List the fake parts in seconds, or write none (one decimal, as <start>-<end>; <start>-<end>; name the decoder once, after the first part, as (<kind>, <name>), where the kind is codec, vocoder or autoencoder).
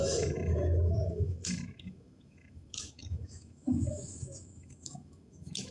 0.0-5.7 (autoencoder, DAC-VAE)